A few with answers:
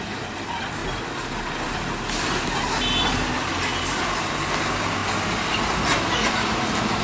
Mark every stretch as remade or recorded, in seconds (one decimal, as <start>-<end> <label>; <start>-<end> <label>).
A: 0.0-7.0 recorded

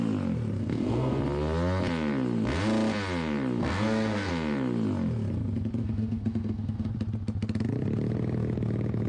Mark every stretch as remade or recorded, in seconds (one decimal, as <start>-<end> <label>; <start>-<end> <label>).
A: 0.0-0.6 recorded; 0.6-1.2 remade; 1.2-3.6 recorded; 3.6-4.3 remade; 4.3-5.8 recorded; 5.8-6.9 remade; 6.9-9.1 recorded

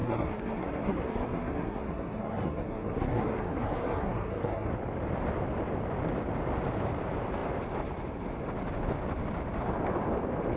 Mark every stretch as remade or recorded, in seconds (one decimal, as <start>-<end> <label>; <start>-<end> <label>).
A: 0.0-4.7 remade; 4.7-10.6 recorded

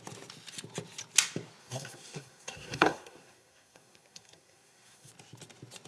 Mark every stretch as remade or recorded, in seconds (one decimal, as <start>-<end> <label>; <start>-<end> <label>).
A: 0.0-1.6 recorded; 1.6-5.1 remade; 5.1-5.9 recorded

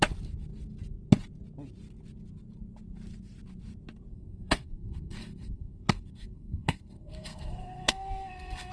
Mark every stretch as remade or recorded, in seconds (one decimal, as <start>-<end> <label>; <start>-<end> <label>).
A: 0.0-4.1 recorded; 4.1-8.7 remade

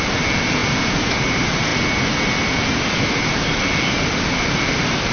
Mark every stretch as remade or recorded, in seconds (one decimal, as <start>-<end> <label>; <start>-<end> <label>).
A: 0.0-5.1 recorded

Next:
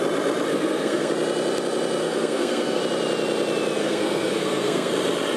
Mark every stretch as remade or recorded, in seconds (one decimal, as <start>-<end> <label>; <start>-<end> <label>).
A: 0.0-0.5 recorded; 0.5-1.1 remade; 1.1-2.0 recorded; 2.0-2.8 remade; 2.8-3.8 recorded; 3.8-4.9 remade; 4.9-5.4 recorded